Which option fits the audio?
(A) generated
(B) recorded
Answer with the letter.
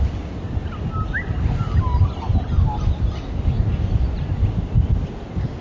B